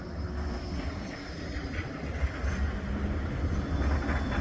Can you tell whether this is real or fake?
real